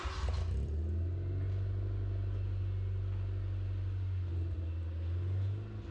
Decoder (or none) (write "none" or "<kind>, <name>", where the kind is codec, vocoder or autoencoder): none